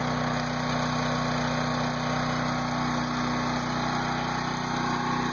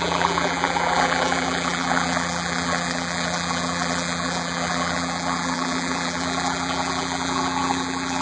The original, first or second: first